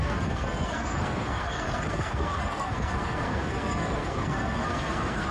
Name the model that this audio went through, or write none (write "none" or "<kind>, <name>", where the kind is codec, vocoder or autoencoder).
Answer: codec, SNAC